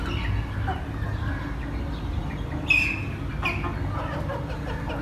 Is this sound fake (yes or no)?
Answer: no